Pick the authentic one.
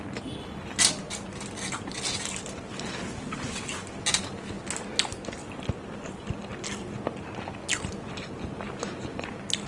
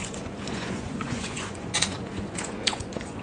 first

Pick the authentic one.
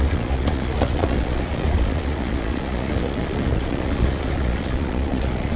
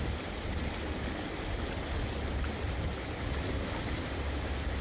second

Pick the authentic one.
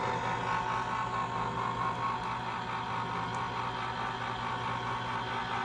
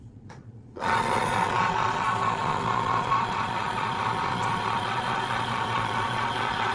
first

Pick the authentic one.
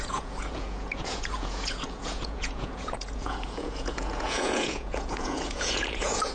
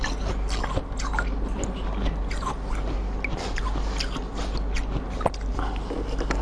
second